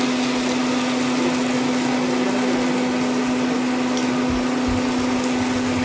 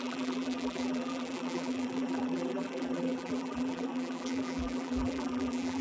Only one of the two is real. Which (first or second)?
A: first